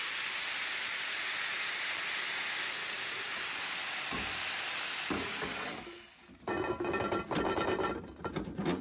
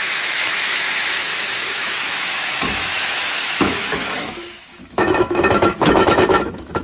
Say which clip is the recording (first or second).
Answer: first